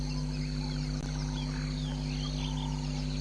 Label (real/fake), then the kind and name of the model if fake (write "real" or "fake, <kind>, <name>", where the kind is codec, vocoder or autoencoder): real